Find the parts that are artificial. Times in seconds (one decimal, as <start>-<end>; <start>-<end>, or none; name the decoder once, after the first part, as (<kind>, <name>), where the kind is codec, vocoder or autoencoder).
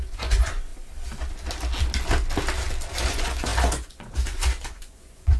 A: 0.0-0.7 (vocoder, Vocos); 3.1-5.4